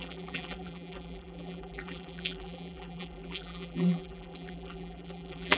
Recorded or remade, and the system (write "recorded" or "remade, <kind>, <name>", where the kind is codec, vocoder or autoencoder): remade, vocoder, BigVGAN v2